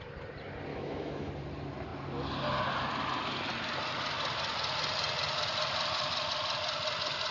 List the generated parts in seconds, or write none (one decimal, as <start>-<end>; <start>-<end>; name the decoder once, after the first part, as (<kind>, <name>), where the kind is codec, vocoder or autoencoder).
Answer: 0.7-1.3 (autoencoder, DAC-VAE)